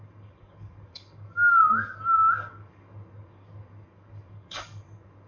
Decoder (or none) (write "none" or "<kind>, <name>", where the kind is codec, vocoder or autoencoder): codec, DAC